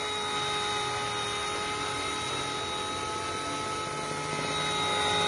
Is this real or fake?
real